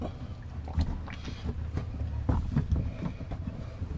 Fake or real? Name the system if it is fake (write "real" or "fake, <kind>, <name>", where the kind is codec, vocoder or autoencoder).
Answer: real